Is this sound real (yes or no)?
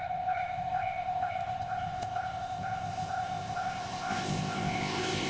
no